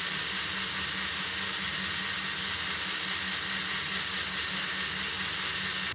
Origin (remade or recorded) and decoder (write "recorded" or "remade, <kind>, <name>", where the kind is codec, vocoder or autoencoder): recorded